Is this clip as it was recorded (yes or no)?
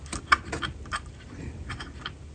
yes